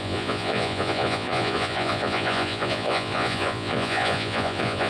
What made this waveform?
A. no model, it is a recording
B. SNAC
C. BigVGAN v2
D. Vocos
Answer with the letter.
D